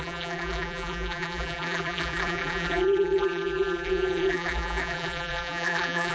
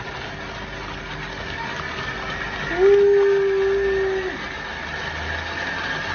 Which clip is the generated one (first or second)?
first